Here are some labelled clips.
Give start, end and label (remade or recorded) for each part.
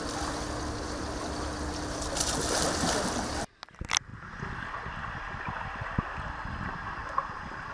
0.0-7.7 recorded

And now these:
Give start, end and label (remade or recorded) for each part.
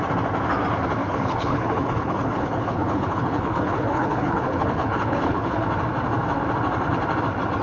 0.0-1.0 recorded; 1.0-5.6 remade; 5.6-7.6 recorded